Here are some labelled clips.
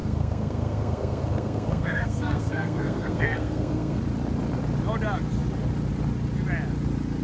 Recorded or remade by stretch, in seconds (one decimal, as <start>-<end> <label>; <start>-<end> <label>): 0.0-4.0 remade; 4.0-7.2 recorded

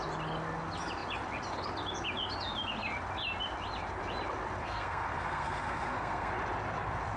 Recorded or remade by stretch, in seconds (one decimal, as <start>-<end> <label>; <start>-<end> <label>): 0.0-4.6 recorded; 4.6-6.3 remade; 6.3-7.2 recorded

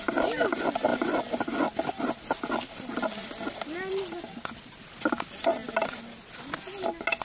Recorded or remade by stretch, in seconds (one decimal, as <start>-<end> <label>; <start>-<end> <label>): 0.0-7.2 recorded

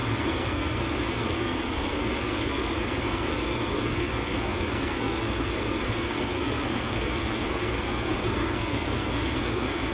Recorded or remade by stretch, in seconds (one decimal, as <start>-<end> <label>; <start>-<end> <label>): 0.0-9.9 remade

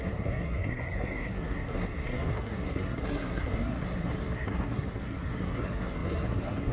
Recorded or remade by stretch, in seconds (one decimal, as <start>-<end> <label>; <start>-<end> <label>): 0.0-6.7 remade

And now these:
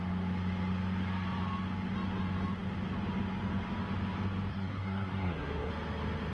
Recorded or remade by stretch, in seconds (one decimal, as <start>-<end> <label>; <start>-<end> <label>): 0.0-4.5 recorded; 4.5-5.7 remade; 5.7-6.3 recorded

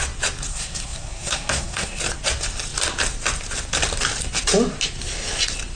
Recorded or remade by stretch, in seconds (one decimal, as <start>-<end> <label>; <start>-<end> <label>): 0.0-0.5 recorded; 0.5-2.0 remade; 2.0-5.8 recorded

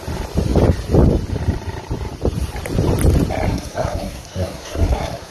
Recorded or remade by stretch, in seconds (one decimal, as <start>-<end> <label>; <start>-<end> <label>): 0.0-3.5 recorded; 3.5-5.3 remade